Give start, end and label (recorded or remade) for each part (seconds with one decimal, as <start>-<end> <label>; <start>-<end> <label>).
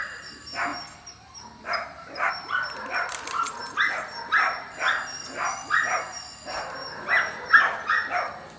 0.0-8.6 recorded